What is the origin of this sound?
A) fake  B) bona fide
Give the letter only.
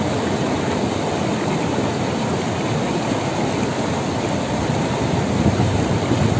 B